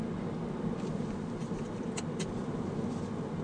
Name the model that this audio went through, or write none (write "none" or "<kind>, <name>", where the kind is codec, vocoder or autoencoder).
none